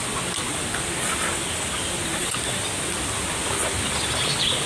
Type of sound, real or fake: real